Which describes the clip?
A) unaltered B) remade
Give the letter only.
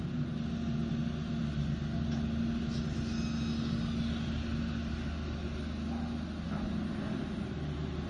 A